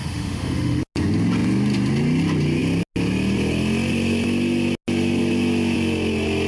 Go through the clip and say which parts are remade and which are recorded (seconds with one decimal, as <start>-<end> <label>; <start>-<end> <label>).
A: 0.0-0.8 remade; 0.8-6.5 recorded